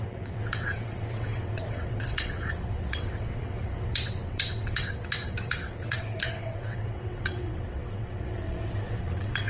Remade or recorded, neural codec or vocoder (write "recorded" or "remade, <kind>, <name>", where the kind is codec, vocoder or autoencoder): remade, vocoder, WaveNeXt